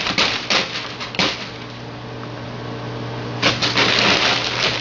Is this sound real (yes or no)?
yes